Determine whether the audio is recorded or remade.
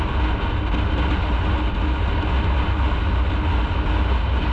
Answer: recorded